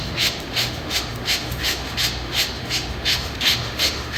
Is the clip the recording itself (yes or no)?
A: no